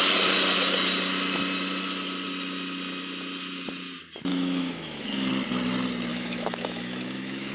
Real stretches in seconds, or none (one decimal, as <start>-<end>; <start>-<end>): 0.0-4.3; 5.3-6.1